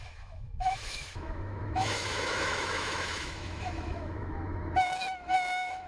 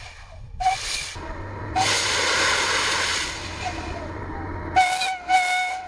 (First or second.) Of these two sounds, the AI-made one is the first